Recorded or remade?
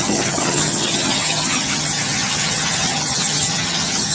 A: remade